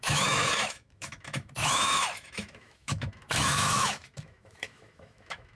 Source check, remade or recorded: remade